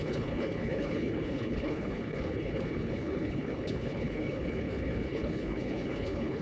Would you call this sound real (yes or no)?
no